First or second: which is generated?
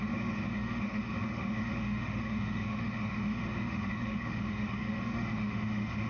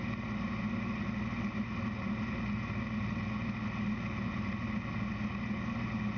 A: first